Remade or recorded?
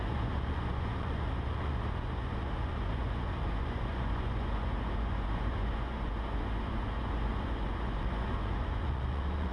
remade